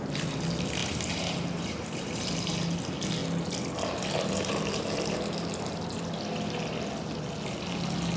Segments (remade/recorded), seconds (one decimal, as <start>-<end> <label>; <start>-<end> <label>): 0.0-0.8 recorded; 0.8-2.5 remade; 2.5-8.2 recorded